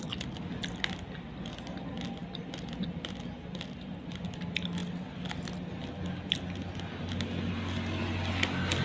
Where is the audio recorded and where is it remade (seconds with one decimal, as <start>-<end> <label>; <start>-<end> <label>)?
0.0-8.8 recorded